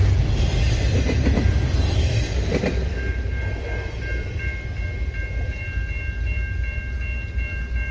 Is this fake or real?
real